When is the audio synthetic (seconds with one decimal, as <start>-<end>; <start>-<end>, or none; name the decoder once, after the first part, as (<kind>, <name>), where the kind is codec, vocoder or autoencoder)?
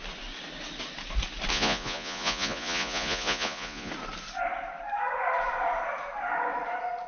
1.5-3.9 (vocoder, Vocos)